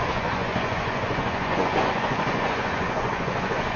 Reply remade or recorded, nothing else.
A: remade